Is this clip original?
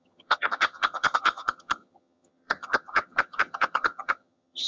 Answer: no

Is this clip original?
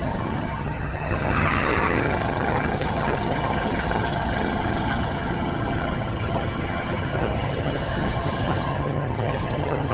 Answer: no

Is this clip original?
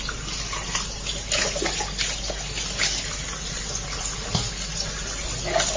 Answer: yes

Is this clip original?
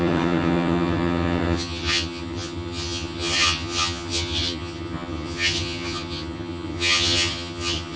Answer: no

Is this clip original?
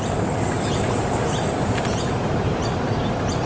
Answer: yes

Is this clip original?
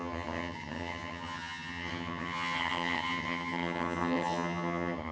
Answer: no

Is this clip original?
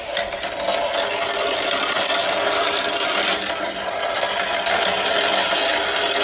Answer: yes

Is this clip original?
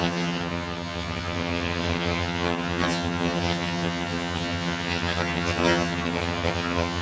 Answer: no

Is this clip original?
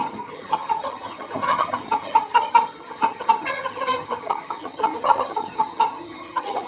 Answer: no